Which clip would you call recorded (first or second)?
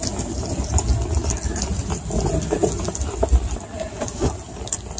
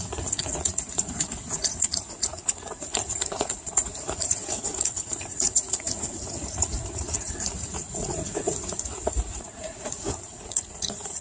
first